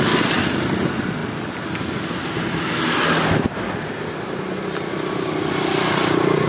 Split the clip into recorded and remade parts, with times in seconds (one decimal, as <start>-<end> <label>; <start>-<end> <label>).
0.0-6.5 recorded